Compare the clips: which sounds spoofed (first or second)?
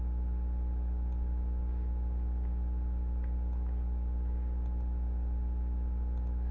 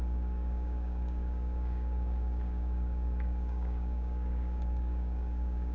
second